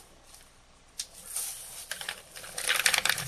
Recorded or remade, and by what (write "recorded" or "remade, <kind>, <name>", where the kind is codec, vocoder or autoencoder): recorded